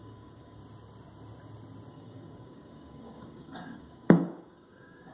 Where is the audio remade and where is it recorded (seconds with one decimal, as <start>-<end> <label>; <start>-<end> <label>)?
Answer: 0.0-0.6 remade; 0.6-1.9 recorded; 1.9-5.1 remade